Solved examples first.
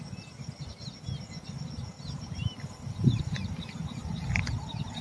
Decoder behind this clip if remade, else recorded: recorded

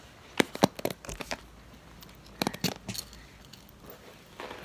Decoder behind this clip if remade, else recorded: recorded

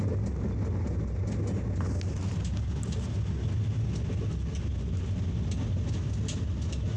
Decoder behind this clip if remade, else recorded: recorded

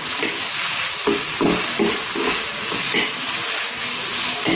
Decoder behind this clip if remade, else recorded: recorded